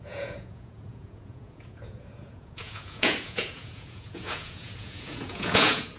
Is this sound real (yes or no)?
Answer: no